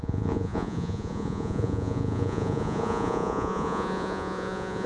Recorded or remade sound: remade